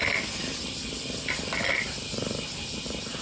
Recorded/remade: remade